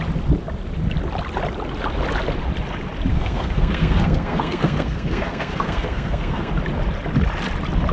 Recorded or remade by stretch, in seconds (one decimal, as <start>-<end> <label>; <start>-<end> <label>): 0.0-3.1 recorded; 3.1-6.5 remade; 6.5-7.9 recorded